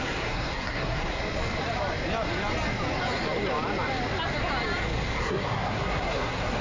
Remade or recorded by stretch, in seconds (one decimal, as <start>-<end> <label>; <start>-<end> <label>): 0.0-1.2 remade; 1.2-5.2 recorded; 5.2-6.6 remade